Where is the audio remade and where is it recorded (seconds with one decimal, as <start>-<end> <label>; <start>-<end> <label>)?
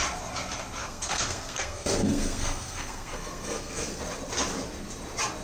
0.0-0.8 recorded; 0.8-4.0 remade; 4.0-5.4 recorded